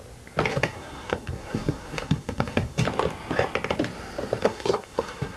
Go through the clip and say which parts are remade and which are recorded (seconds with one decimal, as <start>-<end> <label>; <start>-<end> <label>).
0.0-0.5 recorded; 0.5-2.8 remade; 2.8-4.4 recorded; 4.4-5.4 remade